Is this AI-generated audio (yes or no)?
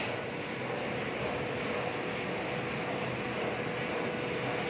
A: no